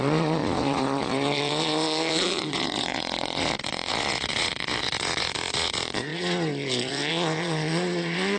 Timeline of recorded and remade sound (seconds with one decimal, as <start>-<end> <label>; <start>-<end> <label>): 0.0-8.4 remade